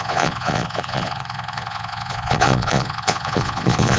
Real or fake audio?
fake